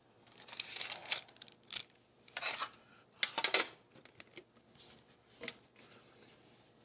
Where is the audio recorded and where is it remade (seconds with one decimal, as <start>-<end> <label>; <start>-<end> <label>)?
0.0-6.8 recorded